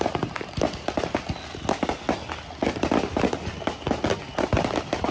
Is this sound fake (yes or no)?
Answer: no